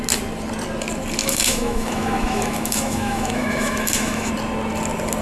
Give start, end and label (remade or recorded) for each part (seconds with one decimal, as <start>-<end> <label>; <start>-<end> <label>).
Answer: 0.0-1.2 recorded; 1.2-4.3 remade; 4.3-5.2 recorded